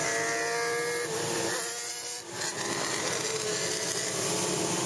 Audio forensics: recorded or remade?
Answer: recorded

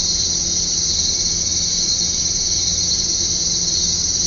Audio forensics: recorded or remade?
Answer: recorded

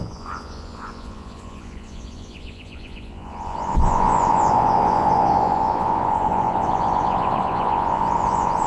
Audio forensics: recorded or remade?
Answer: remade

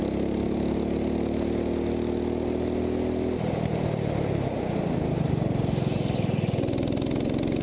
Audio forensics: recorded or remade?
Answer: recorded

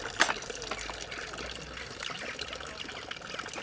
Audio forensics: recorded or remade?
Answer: recorded